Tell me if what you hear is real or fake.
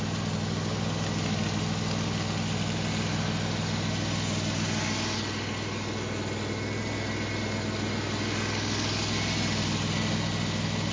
real